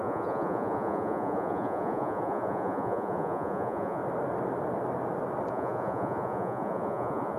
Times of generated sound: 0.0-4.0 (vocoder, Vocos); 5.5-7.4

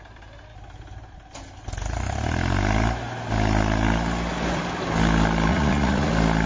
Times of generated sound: 5.5-6.1 (vocoder, Vocos)

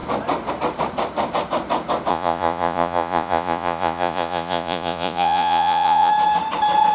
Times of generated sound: 2.1-6.1 (vocoder, Vocos)

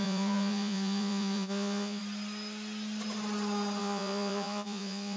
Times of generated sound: 0.0-2.0 (vocoder, Vocos); 3.8-5.2

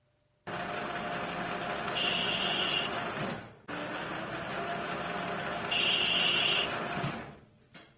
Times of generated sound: 2.2-2.7 (vocoder, Vocos)

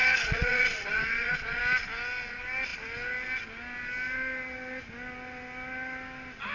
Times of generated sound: 0.0-1.6 (vocoder, Vocos)